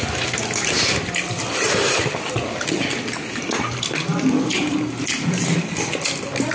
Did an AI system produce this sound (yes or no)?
no